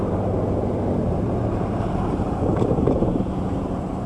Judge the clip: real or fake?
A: fake